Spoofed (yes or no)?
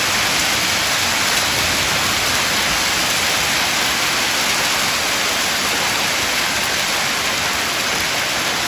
no